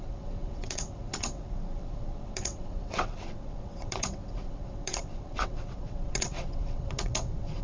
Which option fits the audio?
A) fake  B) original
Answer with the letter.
A